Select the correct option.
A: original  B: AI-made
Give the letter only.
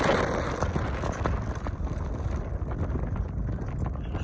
A